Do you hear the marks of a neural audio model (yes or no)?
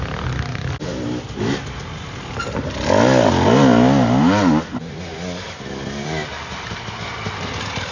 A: no